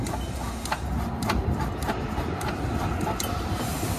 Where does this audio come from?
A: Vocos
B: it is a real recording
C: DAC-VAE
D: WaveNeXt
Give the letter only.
B